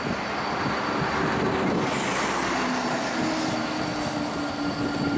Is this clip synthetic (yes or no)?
no